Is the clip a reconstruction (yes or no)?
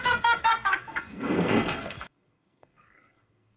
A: yes